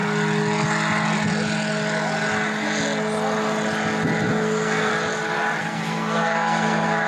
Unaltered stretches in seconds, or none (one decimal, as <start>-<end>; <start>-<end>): 0.0-4.3; 4.9-5.6